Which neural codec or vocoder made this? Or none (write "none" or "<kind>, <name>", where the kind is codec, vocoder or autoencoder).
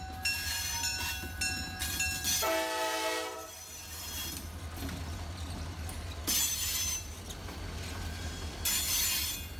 none